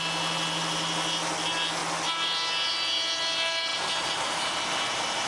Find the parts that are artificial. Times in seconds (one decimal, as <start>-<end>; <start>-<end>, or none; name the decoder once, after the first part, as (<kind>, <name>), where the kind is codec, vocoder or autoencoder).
3.7-4.4 (vocoder, BigVGAN v2)